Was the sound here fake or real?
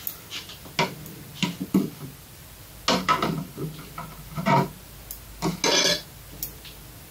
real